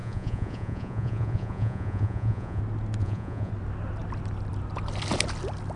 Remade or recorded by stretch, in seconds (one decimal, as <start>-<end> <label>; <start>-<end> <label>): 0.0-2.6 remade; 2.6-3.0 recorded; 3.0-3.5 remade; 3.5-5.8 recorded